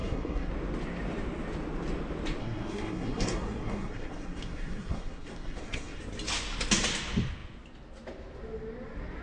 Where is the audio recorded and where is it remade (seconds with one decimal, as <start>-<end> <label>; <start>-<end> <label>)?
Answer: 0.0-0.5 remade; 0.5-2.4 recorded; 2.4-6.0 remade; 6.0-9.2 recorded